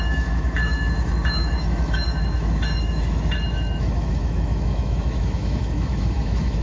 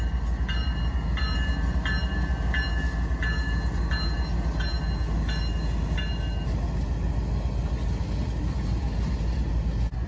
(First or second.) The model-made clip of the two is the first